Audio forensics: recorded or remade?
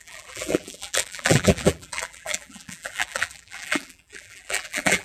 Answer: remade